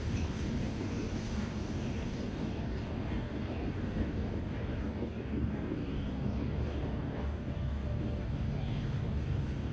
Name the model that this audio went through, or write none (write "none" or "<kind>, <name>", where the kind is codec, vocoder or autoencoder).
codec, DAC